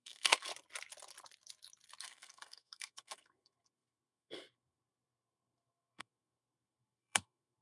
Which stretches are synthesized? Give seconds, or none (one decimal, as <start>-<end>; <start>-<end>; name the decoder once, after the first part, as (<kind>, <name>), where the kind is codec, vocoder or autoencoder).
0.0-0.5 (codec, SNAC); 2.0-7.6